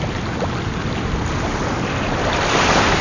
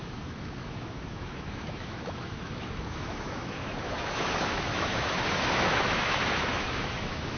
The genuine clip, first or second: first